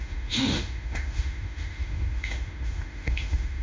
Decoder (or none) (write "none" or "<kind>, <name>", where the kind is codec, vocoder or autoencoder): autoencoder, DAC-VAE